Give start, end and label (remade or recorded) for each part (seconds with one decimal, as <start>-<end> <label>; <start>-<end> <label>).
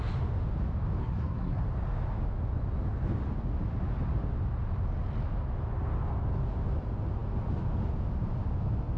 0.0-1.0 recorded; 1.0-1.6 remade; 1.6-9.0 recorded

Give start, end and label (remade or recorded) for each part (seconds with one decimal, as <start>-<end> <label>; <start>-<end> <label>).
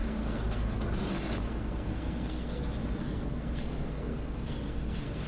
0.0-0.8 remade; 0.8-1.4 recorded; 1.4-2.6 remade; 2.6-3.0 recorded; 3.0-5.3 remade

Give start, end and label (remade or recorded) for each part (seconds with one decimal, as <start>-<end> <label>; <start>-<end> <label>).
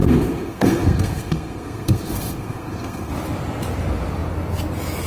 0.0-3.1 remade; 3.1-5.1 recorded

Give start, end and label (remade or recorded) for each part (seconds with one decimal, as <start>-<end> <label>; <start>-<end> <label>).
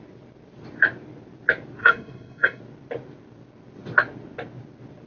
0.0-1.8 recorded; 1.8-2.6 remade; 2.6-5.1 recorded